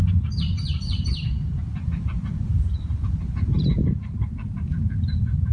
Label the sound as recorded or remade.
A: remade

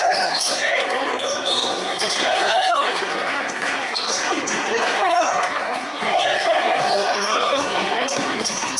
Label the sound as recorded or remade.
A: remade